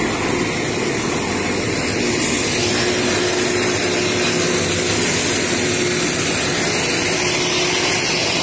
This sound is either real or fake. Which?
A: real